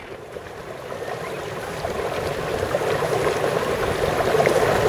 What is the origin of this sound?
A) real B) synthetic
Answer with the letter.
A